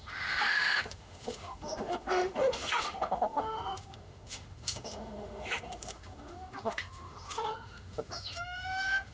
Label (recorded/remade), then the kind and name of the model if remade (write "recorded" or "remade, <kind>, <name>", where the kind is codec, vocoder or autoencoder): remade, autoencoder, DAC-VAE